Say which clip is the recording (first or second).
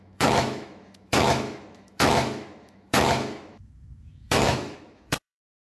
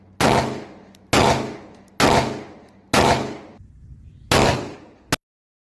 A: second